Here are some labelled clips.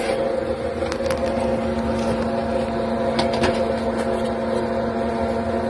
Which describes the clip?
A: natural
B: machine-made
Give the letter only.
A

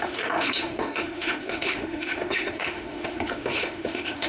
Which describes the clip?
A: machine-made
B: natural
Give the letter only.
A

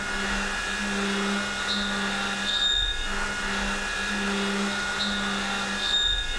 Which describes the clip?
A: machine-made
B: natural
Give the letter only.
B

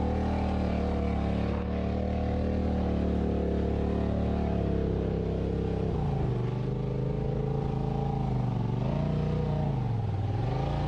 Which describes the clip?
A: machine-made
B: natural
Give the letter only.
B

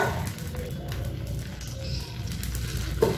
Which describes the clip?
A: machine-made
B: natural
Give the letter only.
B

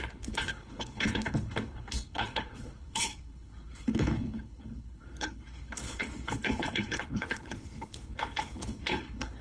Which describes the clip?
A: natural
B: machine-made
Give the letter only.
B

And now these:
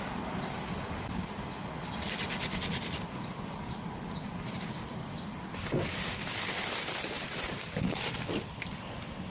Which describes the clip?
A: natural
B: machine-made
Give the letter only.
A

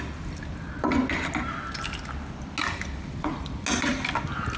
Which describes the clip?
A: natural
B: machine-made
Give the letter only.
A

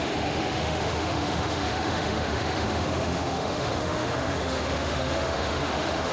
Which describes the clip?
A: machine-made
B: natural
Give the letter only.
A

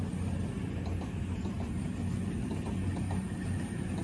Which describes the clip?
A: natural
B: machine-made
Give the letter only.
A